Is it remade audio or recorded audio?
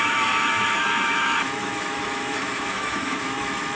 remade